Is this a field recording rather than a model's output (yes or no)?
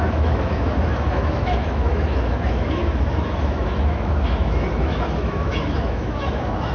no